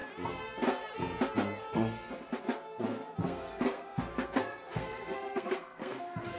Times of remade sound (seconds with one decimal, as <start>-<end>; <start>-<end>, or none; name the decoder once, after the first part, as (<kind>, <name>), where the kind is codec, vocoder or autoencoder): 3.2-6.4 (codec, SNAC)